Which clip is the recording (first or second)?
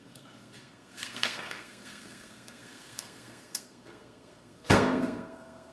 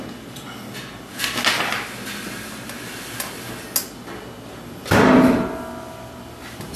second